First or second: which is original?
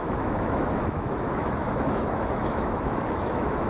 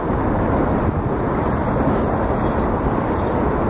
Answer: second